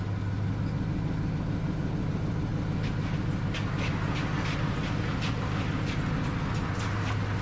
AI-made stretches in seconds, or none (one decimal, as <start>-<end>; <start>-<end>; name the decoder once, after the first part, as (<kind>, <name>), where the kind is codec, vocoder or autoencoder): none